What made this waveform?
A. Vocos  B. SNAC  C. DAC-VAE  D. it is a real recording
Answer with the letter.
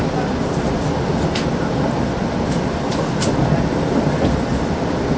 D